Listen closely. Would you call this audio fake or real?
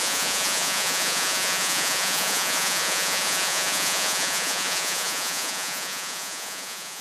fake